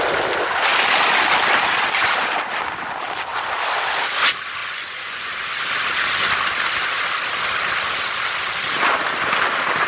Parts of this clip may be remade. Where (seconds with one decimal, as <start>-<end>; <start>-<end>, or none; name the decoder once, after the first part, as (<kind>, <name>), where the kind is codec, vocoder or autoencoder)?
4.6-5.3 (vocoder, Vocos)